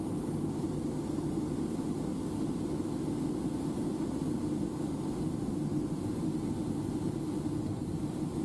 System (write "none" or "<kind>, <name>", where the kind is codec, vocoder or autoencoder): none